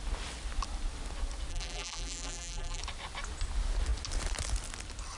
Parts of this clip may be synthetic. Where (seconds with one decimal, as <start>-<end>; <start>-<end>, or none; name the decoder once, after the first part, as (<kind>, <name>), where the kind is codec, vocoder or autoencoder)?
1.5-2.8 (vocoder, BigVGAN v2)